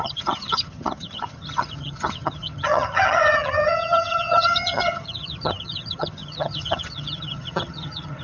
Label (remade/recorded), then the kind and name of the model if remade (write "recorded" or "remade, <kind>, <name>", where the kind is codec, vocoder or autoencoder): remade, vocoder, HiFi-GAN